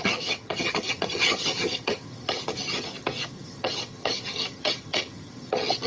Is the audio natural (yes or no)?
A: no